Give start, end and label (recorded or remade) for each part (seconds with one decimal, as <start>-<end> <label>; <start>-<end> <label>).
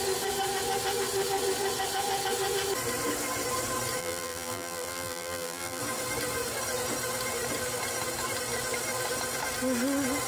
0.0-4.0 recorded; 4.0-5.8 remade; 5.8-10.3 recorded